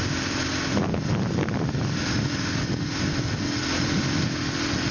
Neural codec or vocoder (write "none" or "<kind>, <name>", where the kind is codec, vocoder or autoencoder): none